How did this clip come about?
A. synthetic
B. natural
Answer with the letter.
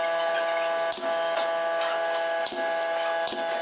B